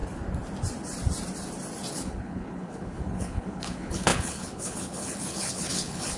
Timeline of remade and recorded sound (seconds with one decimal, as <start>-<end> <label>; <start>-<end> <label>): 0.0-1.9 recorded; 1.9-6.2 remade